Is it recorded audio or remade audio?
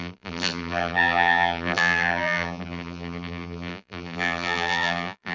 remade